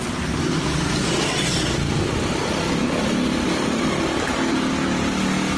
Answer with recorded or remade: recorded